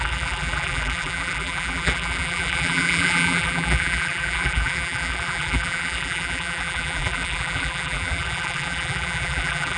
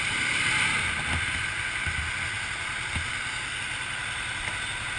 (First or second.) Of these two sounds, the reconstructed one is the first